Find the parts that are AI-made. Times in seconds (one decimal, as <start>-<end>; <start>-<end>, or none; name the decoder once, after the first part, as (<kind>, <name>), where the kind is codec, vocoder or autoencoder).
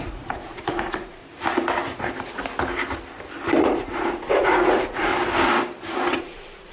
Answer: 0.0-1.2 (vocoder, Vocos); 3.6-5.1; 6.2-6.7